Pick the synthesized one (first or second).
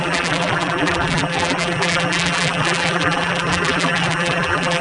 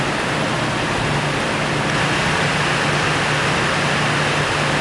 first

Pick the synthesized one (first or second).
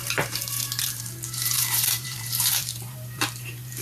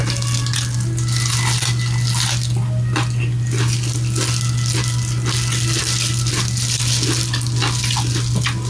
first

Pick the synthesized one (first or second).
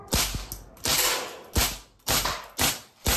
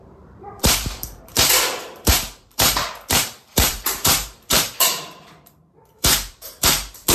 second